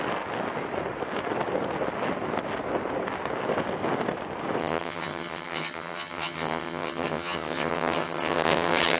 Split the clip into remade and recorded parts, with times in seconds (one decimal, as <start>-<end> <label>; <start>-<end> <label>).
0.0-4.6 recorded; 4.6-9.0 remade